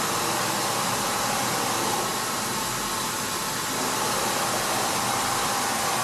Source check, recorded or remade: recorded